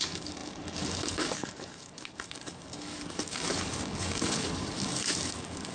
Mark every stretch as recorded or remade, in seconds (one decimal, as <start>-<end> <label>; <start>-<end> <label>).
0.0-5.7 remade